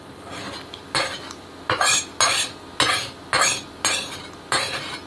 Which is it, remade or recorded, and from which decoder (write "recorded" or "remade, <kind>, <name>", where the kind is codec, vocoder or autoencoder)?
recorded